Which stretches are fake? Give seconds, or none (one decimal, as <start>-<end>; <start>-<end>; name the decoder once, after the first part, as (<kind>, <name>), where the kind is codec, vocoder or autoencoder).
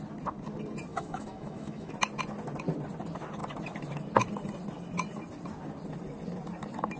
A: 0.9-1.9 (autoencoder, DAC-VAE)